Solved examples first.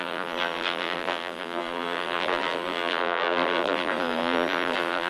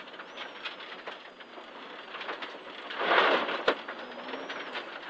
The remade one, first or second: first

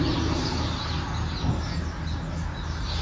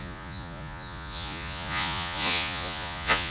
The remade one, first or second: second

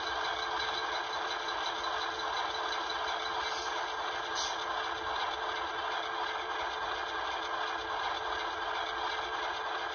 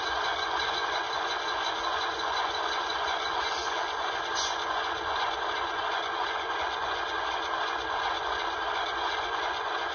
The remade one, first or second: second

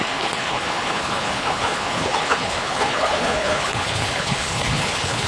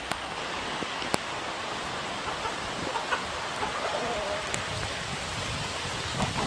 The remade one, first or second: first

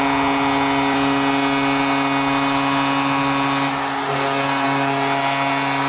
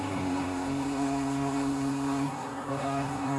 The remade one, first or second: second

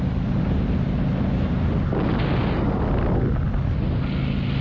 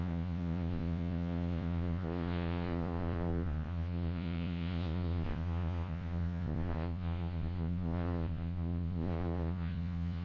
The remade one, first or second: second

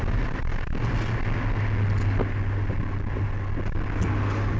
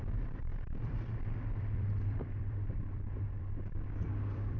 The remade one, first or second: second